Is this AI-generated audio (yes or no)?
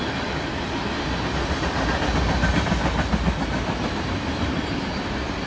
no